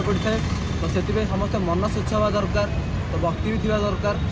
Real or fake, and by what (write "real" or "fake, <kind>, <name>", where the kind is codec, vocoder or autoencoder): real